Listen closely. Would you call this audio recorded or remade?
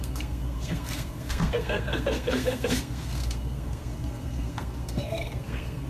remade